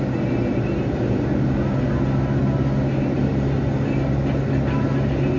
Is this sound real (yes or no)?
yes